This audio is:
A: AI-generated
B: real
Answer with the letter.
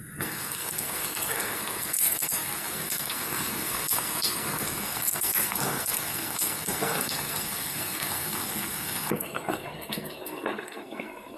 A